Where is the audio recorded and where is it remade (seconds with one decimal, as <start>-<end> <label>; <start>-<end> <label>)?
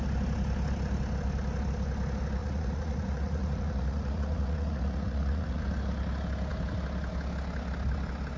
0.0-2.4 recorded; 2.4-5.6 remade; 5.6-8.4 recorded